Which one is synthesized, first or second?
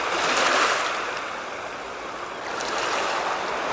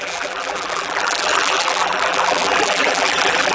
second